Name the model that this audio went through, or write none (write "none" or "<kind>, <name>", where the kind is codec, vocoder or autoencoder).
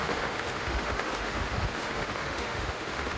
autoencoder, DAC-VAE